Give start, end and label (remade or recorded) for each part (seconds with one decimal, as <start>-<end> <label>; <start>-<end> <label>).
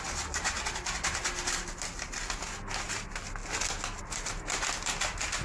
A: 0.0-5.4 recorded